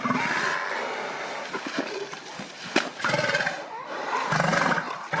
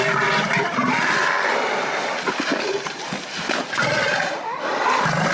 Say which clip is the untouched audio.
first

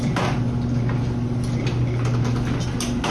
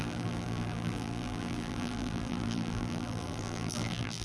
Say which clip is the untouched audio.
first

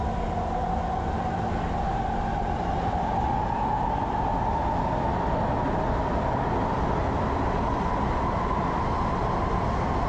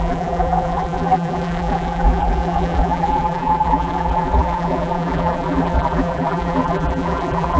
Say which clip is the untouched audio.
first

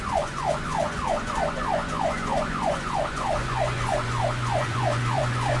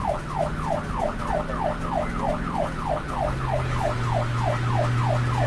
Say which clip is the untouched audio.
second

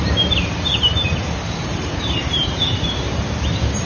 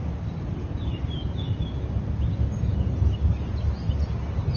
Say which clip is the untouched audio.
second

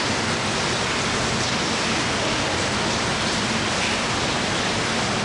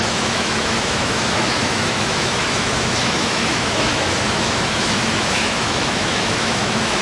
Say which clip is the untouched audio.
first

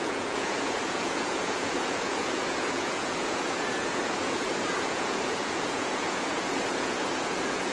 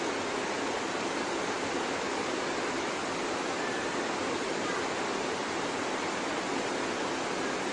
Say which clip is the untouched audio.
second